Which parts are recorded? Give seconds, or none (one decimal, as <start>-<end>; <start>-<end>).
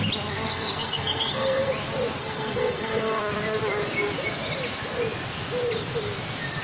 0.0-0.5; 1.7-2.2; 3.2-6.6